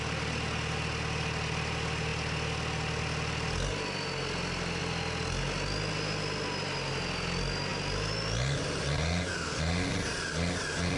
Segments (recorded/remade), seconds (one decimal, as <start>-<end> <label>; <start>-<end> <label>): 0.0-11.0 recorded